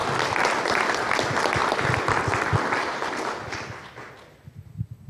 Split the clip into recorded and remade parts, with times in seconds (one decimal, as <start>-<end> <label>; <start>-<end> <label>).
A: 0.0-5.1 recorded